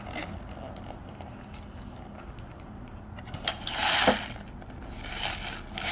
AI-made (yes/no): no